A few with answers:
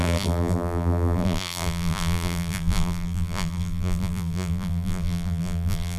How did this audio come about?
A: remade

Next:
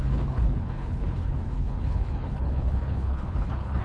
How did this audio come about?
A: remade